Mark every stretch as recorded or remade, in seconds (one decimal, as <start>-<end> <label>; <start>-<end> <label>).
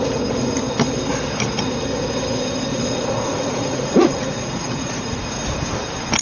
0.0-2.7 recorded; 2.7-5.2 remade; 5.2-6.2 recorded